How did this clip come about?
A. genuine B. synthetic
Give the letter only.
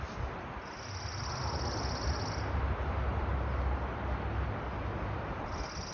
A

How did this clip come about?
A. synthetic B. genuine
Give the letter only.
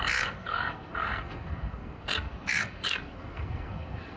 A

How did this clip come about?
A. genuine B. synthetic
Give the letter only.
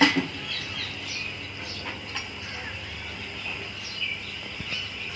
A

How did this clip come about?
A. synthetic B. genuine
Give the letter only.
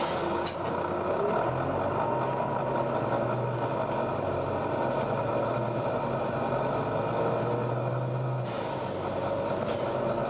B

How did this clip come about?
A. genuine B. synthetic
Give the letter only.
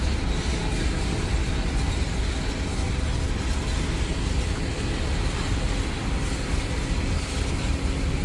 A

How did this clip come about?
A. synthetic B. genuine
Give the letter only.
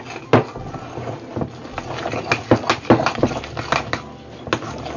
B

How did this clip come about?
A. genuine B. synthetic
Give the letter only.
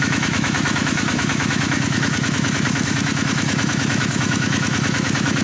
B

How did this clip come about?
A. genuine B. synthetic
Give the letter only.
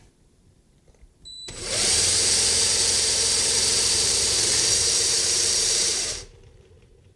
B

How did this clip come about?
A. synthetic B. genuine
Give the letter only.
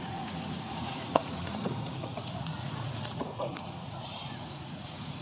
A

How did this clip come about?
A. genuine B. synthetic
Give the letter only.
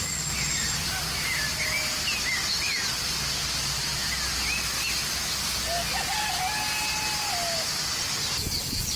A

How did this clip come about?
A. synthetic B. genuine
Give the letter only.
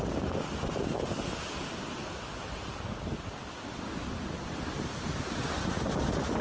B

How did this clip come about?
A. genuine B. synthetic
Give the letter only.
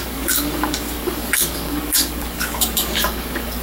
B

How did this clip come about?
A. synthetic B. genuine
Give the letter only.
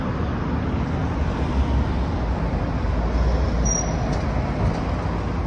B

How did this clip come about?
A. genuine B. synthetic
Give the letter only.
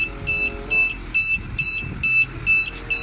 A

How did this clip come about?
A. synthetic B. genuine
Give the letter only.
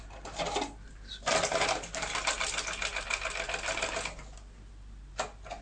B